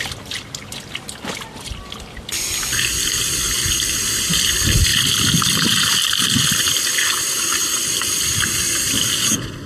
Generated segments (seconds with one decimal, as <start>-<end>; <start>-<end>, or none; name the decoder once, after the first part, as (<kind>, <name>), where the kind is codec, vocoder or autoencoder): 4.9-5.4 (vocoder, BigVGAN v2); 7.6-8.6